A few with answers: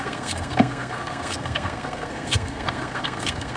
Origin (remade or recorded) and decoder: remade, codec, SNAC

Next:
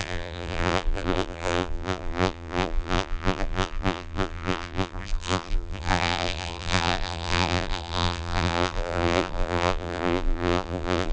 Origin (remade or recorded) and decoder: remade, vocoder, BigVGAN v2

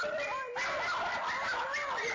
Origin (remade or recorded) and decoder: recorded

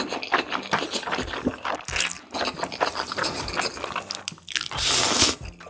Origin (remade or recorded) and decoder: recorded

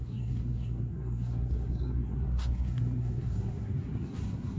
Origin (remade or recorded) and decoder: remade, codec, SNAC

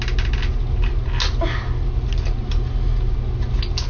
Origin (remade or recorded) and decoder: recorded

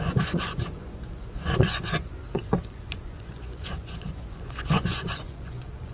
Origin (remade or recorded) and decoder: remade, vocoder, Vocos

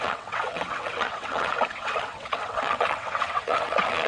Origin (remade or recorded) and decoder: remade, vocoder, WaveNeXt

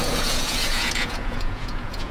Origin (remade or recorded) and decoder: remade, vocoder, Vocos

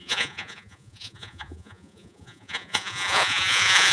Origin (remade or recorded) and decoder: remade, vocoder, Vocos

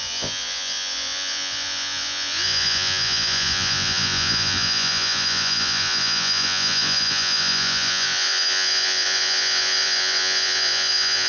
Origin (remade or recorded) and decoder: remade, vocoder, Vocos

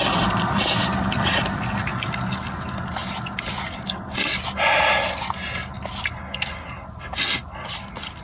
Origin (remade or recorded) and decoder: recorded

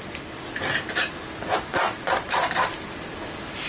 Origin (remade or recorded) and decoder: recorded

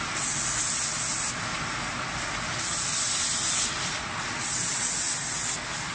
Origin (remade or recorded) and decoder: recorded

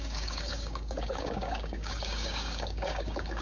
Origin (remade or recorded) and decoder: remade, codec, DAC